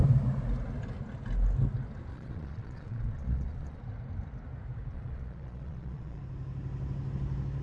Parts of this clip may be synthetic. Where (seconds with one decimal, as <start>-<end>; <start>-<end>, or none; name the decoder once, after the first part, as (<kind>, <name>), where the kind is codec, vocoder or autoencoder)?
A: 2.1-3.8 (vocoder, Vocos); 4.9-6.2